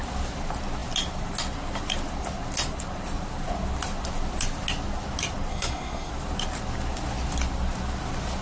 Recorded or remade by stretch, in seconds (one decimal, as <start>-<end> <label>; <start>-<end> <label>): 0.0-5.5 recorded; 5.5-6.1 remade; 6.1-8.4 recorded